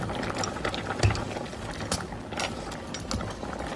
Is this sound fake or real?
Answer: real